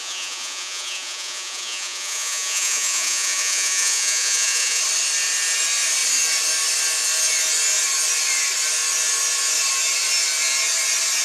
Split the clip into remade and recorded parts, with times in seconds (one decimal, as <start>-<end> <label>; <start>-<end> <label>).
0.0-4.8 remade; 4.8-11.2 recorded